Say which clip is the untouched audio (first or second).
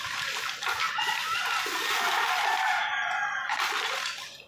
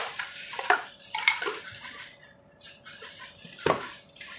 first